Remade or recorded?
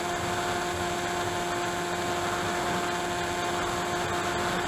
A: recorded